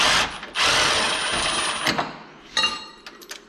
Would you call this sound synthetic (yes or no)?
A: no